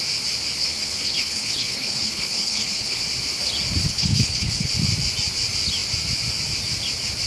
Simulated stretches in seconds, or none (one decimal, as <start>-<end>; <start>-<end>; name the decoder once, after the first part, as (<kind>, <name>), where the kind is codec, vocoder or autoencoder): 0.6-3.0 (codec, HILCodec); 3.8-4.7